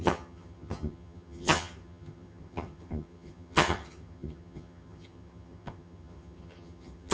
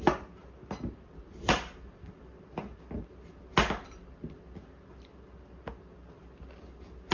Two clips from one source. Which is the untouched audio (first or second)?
second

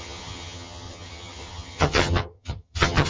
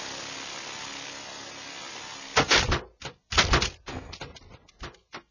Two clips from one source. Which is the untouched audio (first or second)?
second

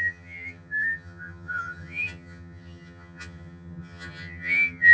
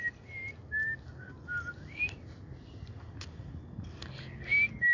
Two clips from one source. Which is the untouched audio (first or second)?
second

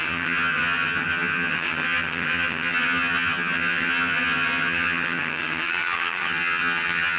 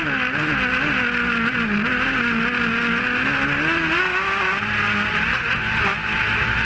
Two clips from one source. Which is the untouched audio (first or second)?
second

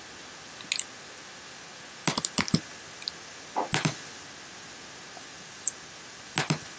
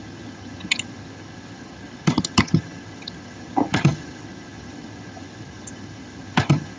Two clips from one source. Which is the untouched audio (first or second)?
first